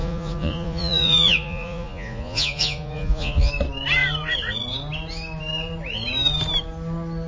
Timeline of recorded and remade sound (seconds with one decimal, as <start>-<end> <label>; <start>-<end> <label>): 0.0-3.5 remade; 3.5-7.3 recorded